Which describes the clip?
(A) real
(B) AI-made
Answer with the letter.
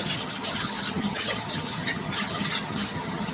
B